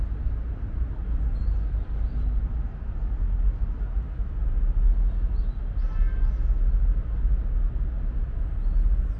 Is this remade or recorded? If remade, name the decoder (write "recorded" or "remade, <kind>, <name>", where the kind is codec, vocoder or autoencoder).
recorded